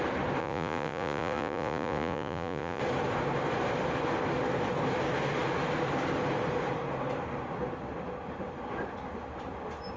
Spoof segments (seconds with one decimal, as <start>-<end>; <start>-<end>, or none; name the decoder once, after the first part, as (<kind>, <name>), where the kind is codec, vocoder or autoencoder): 0.4-2.8 (vocoder, Vocos)